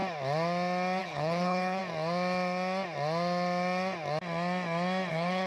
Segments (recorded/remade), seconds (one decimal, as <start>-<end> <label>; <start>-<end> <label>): 0.0-1.0 recorded; 1.0-1.8 remade; 1.8-5.1 recorded; 5.1-5.5 remade